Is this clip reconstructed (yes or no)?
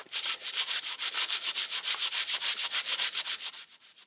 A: yes